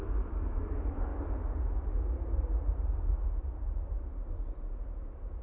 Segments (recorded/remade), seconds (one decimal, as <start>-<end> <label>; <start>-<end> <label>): 0.0-5.4 recorded